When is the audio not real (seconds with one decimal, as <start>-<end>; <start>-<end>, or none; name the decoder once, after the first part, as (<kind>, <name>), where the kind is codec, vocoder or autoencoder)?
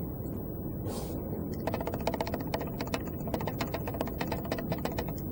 none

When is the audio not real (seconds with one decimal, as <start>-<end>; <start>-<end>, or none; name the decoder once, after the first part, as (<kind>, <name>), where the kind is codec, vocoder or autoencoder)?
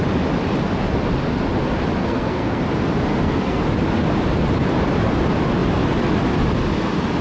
2.0-2.6 (codec, SNAC); 3.1-3.6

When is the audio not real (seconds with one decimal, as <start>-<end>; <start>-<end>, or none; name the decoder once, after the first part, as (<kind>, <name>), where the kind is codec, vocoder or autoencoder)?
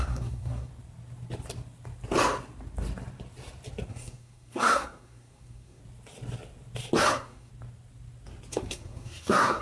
0.0-0.7 (codec, SNAC); 3.9-5.8; 7.1-7.5; 8.5-9.6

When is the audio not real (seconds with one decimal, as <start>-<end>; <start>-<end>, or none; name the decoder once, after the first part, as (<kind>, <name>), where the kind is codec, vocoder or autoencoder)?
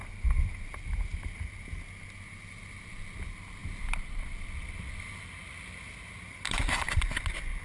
none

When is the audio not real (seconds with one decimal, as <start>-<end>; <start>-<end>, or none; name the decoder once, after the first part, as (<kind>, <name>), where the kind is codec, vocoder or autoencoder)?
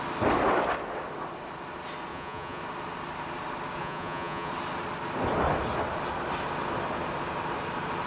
2.1-2.6 (vocoder, Vocos); 3.8-4.5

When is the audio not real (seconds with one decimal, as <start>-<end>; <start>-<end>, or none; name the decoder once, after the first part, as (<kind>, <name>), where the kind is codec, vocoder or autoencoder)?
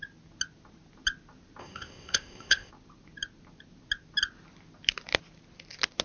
1.6-2.7 (codec, ZipCodec)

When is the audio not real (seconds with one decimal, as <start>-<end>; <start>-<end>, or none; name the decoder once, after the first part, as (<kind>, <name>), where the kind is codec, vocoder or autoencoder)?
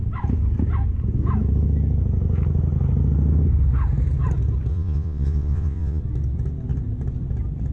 4.7-6.0 (vocoder, Vocos)